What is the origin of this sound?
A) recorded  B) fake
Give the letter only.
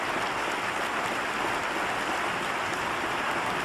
A